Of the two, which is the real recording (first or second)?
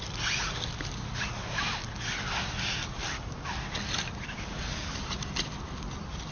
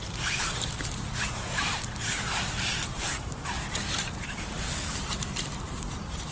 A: first